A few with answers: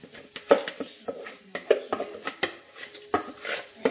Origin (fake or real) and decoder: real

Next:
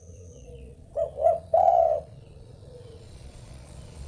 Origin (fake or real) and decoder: fake, vocoder, Vocos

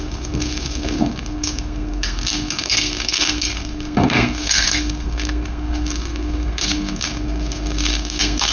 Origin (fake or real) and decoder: fake, codec, SNAC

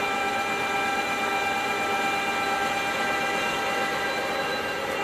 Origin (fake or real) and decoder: real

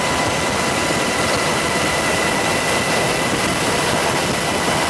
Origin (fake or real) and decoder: real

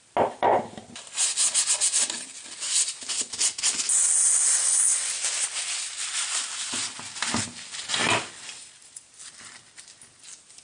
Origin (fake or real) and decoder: real